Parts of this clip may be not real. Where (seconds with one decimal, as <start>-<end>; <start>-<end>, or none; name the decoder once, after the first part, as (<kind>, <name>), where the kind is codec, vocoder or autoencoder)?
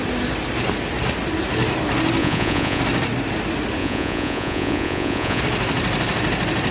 2.2-2.8 (vocoder, Vocos); 3.8-5.4